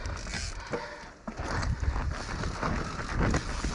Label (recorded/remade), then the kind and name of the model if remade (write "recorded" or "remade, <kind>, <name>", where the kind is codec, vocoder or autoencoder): recorded